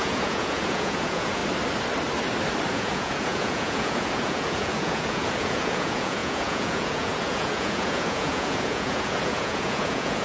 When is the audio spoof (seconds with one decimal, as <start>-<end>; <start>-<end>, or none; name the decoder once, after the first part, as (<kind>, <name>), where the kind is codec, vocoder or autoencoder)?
0.0-1.4 (vocoder, Vocos); 2.7-10.2